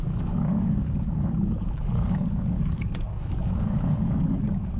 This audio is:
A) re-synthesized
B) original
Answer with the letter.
A